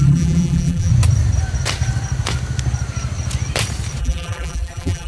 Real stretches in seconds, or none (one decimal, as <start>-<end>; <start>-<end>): 0.9-4.0